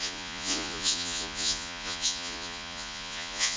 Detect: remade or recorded remade